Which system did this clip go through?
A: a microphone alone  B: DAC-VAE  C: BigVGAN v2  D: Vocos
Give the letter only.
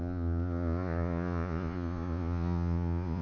D